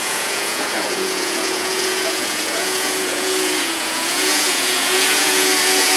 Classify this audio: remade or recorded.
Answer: remade